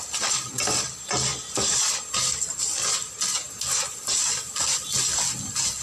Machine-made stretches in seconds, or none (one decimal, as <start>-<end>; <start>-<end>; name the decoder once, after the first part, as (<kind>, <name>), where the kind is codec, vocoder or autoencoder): none